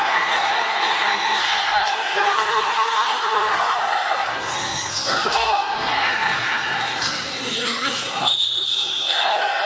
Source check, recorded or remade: remade